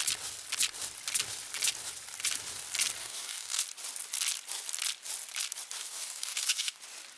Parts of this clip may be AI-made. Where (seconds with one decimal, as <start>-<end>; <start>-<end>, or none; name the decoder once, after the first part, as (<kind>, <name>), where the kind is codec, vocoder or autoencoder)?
3.0-3.6 (codec, DAC); 5.8-6.8